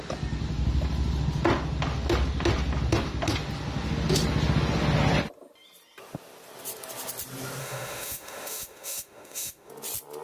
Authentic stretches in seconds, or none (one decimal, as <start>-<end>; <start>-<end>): 0.0-7.6; 9.7-10.2